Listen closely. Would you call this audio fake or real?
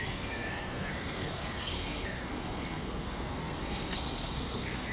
fake